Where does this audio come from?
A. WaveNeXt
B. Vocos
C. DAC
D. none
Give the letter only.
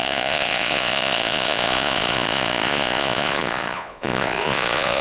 B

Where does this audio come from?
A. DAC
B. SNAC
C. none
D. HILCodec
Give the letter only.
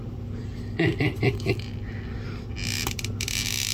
C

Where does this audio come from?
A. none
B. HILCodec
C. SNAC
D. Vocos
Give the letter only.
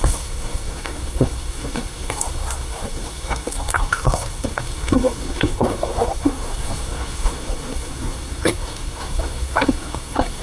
C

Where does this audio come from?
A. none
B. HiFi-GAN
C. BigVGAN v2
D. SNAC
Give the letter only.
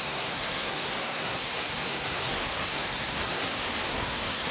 D